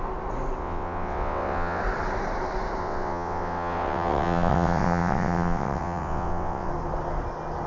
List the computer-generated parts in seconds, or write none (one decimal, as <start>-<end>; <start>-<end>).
0.6-1.8; 2.8-6.7